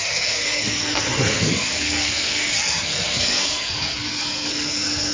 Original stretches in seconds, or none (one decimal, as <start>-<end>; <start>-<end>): none

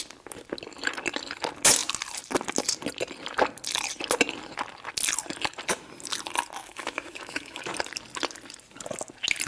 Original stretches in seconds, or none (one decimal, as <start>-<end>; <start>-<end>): 0.0-6.6; 7.6-9.5

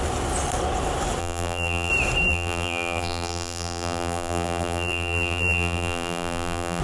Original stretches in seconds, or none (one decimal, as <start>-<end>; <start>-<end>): 0.0-1.2; 1.9-2.3